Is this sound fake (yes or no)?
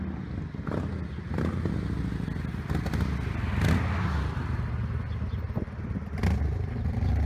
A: no